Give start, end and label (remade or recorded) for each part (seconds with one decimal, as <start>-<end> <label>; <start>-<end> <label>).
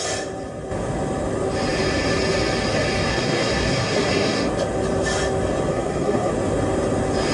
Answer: 0.0-3.1 recorded; 3.1-4.5 remade; 4.5-5.7 recorded; 5.7-6.3 remade; 6.3-7.3 recorded